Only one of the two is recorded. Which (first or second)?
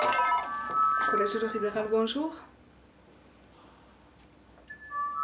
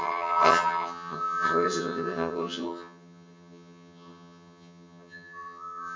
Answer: first